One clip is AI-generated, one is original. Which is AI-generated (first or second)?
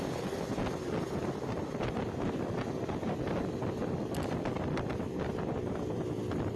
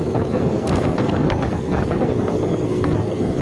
second